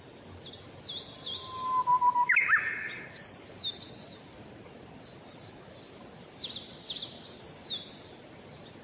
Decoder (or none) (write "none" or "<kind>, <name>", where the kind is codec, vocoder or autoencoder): none